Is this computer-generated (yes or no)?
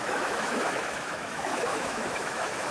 yes